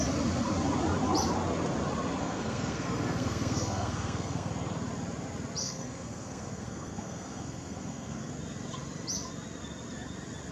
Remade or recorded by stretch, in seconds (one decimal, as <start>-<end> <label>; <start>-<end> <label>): 0.0-2.2 recorded; 2.2-4.5 remade; 4.5-5.6 recorded; 5.6-8.3 remade; 8.3-10.5 recorded